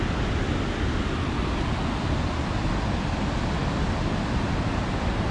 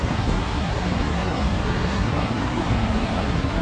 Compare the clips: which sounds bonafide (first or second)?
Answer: first